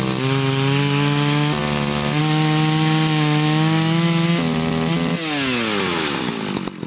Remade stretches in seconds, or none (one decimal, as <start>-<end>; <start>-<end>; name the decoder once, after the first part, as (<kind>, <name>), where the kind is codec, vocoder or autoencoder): none